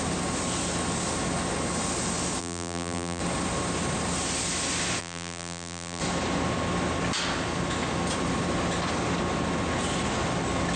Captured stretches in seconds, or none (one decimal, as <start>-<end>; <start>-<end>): 0.0-2.4; 3.2-5.0; 6.0-10.8